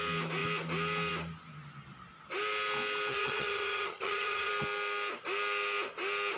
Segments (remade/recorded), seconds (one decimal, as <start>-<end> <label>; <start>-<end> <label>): 0.0-3.1 recorded; 3.1-4.5 remade; 4.5-6.4 recorded